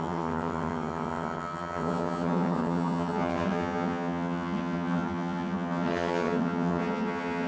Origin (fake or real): fake